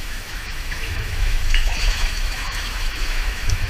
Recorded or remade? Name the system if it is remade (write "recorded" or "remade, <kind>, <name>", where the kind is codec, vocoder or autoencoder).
remade, autoencoder, DAC-VAE